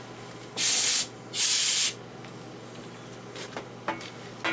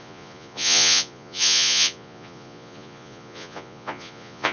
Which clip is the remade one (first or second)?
second